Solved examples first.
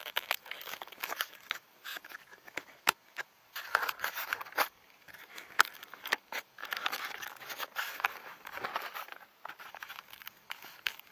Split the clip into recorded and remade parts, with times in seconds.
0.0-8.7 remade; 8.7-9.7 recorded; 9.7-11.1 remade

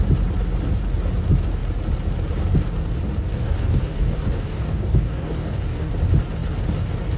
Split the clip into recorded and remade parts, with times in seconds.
0.0-3.3 recorded; 3.3-5.9 remade; 5.9-7.2 recorded

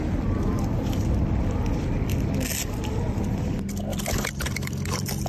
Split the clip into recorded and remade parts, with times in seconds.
0.0-3.9 recorded; 3.9-5.3 remade